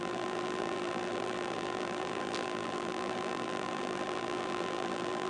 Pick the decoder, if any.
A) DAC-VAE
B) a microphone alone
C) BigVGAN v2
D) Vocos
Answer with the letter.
C